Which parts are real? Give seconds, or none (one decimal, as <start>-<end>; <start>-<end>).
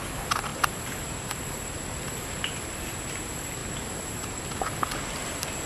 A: 0.0-3.6; 4.4-5.7